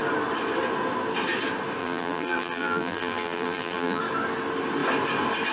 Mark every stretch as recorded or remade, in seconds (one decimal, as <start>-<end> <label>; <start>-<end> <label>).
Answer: 0.0-1.8 recorded; 1.8-4.0 remade; 4.0-5.5 recorded